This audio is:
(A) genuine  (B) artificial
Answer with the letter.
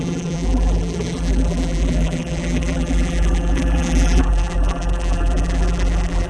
B